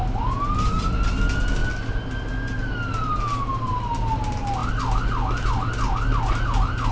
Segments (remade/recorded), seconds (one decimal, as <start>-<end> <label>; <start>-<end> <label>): 0.0-6.9 recorded